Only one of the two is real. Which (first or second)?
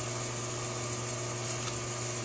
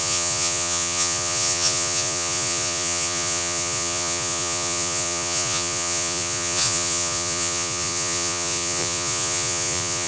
first